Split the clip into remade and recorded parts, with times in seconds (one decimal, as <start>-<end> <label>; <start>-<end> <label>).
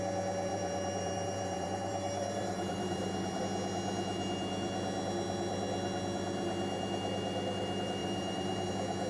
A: 0.0-0.5 recorded; 0.5-3.4 remade; 3.4-8.0 recorded; 8.0-8.7 remade; 8.7-9.1 recorded